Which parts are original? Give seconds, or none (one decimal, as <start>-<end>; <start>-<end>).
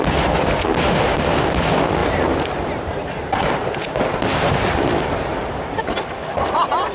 0.0-2.0; 5.8-6.9